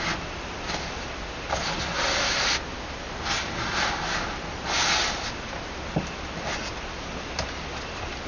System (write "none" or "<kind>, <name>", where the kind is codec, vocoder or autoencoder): none